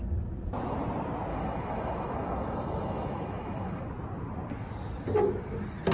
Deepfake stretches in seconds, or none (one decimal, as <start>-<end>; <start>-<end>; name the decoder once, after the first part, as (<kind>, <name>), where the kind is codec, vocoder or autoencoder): 1.3-3.8 (autoencoder, DAC-VAE)